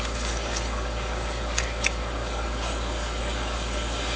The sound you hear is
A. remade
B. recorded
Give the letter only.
A